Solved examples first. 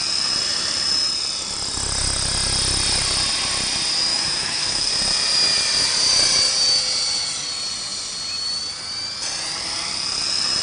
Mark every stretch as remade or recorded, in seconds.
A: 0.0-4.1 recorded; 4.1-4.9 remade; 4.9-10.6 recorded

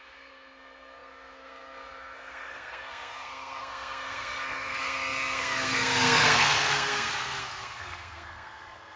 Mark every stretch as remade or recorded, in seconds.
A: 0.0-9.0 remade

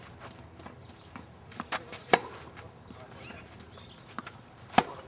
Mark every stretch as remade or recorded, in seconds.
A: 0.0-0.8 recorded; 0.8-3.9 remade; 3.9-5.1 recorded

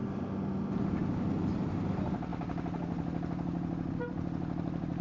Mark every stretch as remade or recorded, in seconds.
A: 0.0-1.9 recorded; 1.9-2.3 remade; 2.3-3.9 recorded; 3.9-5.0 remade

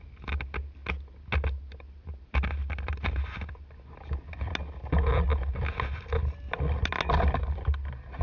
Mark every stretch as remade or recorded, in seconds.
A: 0.0-8.2 recorded

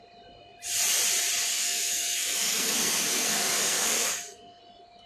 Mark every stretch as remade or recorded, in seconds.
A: 0.0-1.5 recorded; 1.5-4.6 remade; 4.6-5.1 recorded